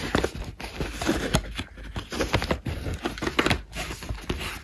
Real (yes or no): yes